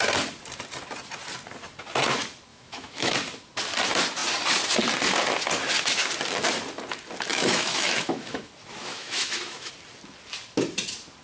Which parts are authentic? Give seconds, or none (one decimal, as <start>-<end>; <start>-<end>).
0.0-2.5; 3.1-7.3; 8.5-8.9; 9.7-11.2